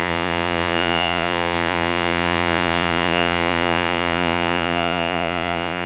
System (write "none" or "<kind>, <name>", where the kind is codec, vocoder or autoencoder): vocoder, Vocos